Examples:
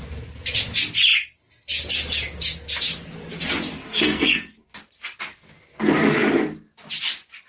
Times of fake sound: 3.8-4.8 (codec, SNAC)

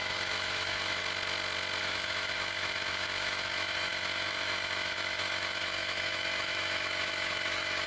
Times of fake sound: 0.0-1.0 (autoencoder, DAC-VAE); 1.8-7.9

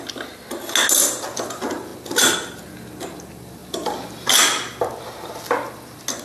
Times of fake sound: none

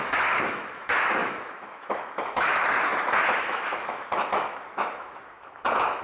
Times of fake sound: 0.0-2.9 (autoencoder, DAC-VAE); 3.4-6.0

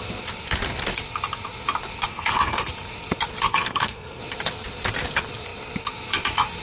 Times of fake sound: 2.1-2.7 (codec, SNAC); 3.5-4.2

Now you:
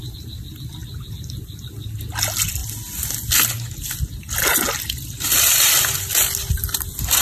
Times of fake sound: none